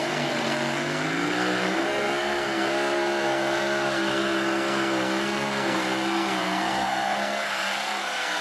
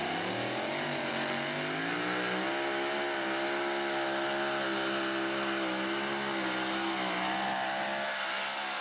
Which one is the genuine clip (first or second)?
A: second